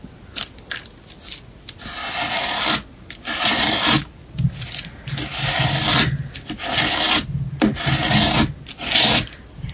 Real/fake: real